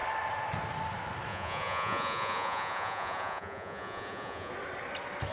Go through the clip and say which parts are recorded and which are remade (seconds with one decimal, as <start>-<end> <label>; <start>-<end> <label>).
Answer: 0.0-1.3 recorded; 1.3-4.5 remade; 4.5-5.3 recorded